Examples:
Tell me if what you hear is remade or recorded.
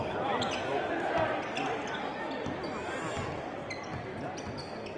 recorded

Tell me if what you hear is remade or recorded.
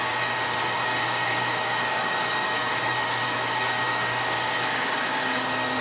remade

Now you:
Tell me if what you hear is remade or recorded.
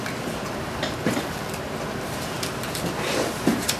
recorded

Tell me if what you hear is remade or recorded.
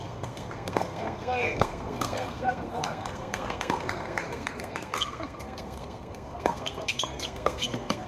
remade